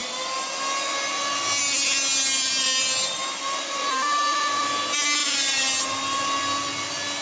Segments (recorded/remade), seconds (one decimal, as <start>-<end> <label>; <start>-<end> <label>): 0.0-5.2 recorded; 5.2-5.8 remade; 5.8-7.2 recorded